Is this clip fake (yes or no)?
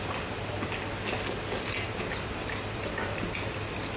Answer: no